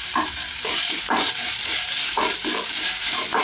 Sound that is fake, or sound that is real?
fake